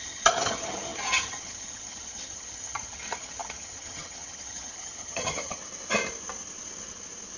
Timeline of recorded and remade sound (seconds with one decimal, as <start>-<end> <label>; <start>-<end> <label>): 0.0-5.6 remade; 5.6-7.4 recorded